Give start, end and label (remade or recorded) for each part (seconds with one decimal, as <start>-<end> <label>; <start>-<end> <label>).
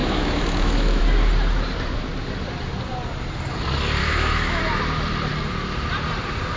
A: 0.0-1.0 remade; 1.0-4.0 recorded; 4.0-4.6 remade; 4.6-6.6 recorded